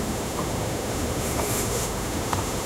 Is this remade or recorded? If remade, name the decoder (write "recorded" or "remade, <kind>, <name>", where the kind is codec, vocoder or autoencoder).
remade, autoencoder, DAC-VAE